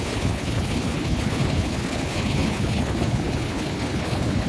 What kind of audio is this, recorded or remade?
remade